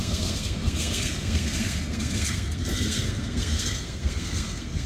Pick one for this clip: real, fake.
fake